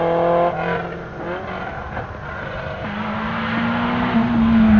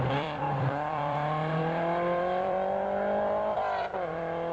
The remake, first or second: second